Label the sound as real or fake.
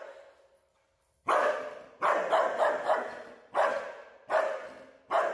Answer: real